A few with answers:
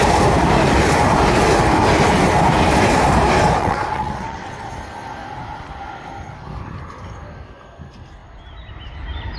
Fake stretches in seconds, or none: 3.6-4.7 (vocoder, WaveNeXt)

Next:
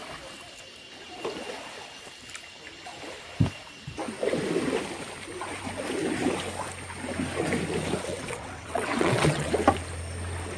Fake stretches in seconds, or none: 8.1-9.5 (vocoder, WaveNeXt)

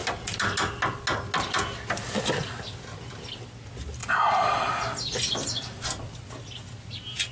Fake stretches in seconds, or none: none